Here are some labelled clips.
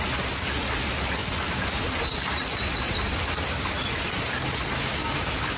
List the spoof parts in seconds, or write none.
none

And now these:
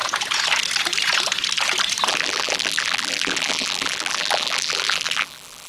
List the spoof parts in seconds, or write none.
2.1-5.7 (vocoder, BigVGAN v2)

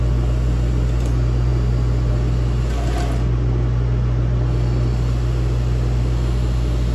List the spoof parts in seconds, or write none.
none

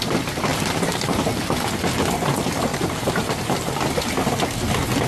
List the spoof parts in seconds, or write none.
0.5-1.2 (vocoder, BigVGAN v2); 2.7-3.8

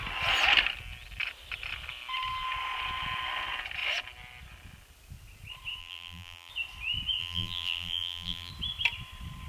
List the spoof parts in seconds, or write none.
5.8-6.5 (vocoder, BigVGAN v2); 7.2-8.5

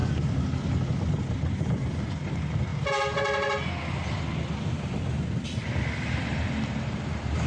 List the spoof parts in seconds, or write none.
1.6-2.7 (vocoder, BigVGAN v2); 6.1-7.5

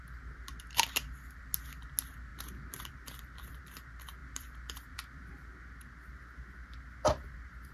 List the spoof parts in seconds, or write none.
2.3-3.6 (vocoder, BigVGAN v2); 4.2-5.3

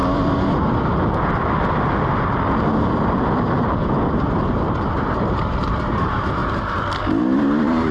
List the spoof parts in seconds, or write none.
4.1-6.4 (vocoder, BigVGAN v2); 7.2-7.9